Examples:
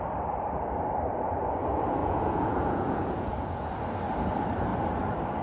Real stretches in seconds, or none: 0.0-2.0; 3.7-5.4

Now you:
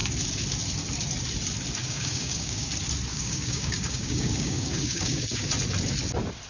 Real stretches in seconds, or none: 0.0-1.8; 2.7-3.1; 5.5-6.5

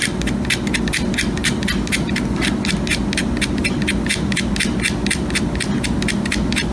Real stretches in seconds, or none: 0.0-6.7

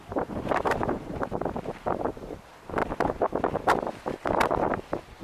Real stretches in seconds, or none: 2.8-5.2

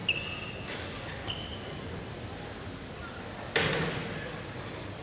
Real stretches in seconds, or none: 0.0-5.0

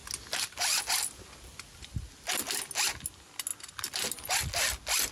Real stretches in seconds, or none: 0.0-5.1

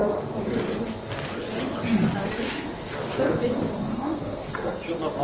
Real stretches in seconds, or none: 0.0-3.9; 4.5-5.2